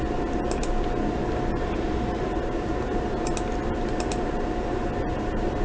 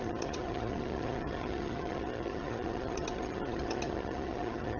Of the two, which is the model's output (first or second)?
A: second